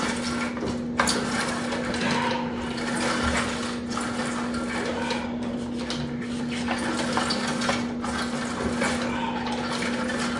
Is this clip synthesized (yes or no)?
no